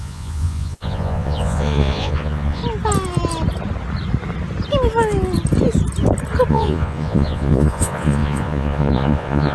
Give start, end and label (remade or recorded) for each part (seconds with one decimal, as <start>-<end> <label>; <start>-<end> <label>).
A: 0.0-2.6 remade; 2.6-6.5 recorded; 6.5-9.5 remade